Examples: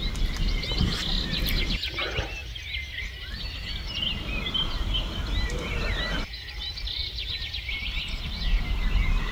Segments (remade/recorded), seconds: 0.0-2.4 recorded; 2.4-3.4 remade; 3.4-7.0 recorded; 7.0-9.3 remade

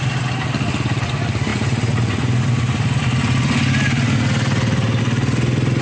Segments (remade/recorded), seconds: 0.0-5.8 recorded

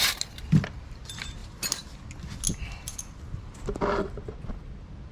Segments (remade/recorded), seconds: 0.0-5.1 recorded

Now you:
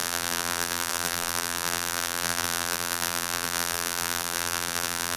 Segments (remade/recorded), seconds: 0.0-5.2 remade

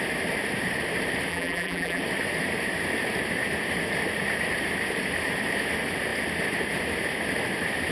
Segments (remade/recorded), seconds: 0.0-1.3 recorded; 1.3-2.0 remade; 2.0-7.9 recorded

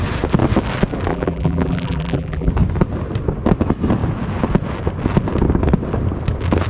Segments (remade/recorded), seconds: 0.0-1.1 recorded; 1.1-2.5 remade; 2.5-6.7 recorded